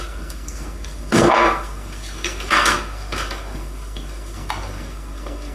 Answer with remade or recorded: remade